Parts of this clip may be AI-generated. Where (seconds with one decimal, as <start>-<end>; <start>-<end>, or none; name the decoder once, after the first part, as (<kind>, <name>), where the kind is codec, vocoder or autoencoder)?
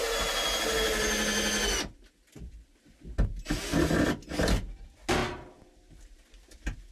none